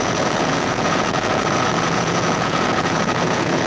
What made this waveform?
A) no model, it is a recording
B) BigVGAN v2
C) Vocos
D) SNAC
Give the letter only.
C